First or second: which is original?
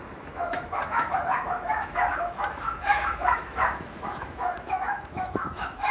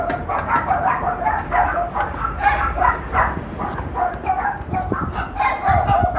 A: second